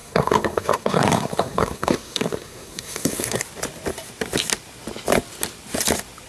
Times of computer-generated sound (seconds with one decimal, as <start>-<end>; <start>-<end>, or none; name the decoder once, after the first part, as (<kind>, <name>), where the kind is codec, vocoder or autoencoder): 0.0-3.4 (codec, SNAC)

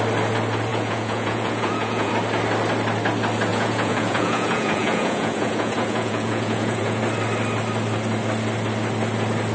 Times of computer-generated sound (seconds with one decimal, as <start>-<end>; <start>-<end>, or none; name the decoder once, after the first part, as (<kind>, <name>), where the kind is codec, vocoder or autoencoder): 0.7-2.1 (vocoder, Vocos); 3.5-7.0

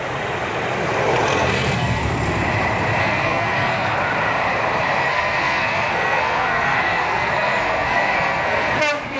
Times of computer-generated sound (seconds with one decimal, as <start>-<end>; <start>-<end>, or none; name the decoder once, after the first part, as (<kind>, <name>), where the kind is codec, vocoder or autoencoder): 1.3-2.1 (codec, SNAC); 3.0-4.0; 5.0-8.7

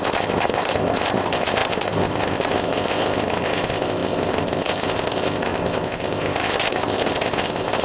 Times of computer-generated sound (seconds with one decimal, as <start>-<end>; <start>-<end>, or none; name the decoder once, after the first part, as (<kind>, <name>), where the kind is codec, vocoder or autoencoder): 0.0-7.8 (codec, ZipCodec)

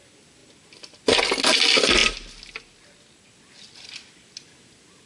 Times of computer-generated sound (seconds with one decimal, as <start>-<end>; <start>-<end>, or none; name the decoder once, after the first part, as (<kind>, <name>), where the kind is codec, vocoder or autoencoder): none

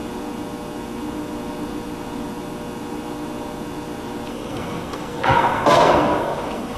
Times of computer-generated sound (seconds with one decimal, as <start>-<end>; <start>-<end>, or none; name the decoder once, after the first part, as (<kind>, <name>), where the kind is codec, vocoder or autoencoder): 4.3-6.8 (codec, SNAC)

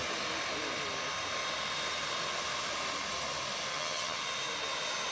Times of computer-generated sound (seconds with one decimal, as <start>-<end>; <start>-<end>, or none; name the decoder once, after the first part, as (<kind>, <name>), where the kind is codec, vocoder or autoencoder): 3.7-4.2 (vocoder, HiFi-GAN)